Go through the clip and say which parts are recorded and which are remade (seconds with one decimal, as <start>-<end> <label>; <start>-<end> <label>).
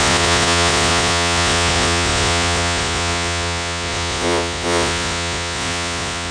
0.0-6.3 remade